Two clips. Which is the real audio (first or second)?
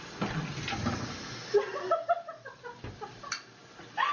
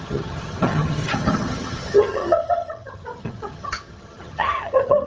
first